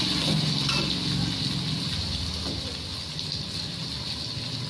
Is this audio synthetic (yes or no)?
no